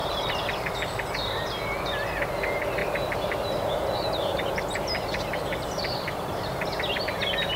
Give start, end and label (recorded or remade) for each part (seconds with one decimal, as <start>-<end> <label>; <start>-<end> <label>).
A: 0.0-1.3 remade; 1.3-2.8 recorded; 2.8-5.8 remade; 5.8-7.6 recorded

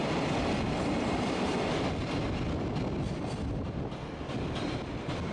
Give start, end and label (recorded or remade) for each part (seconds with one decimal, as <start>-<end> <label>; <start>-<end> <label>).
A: 0.0-2.2 remade; 2.2-5.3 recorded

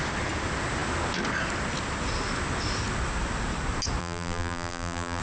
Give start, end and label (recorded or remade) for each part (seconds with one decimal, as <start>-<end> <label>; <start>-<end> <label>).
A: 0.0-4.0 recorded; 4.0-5.2 remade

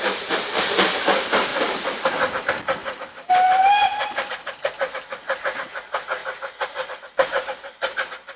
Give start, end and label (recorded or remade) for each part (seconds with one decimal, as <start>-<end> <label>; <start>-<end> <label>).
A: 0.0-1.0 remade; 1.0-2.8 recorded; 2.8-4.5 remade; 4.5-8.4 recorded